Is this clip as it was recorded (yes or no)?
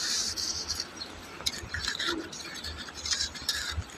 yes